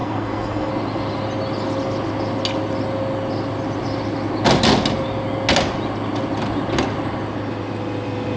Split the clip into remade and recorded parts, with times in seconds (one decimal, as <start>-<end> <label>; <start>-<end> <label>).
0.0-0.7 remade; 0.7-8.4 recorded